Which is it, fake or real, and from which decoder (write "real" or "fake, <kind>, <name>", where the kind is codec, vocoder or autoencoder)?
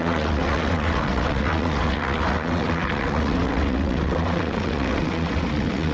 fake, vocoder, WaveNeXt